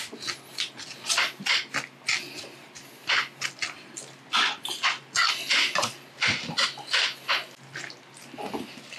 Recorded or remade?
recorded